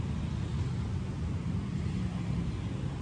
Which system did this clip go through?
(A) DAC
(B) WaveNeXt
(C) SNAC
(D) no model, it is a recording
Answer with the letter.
D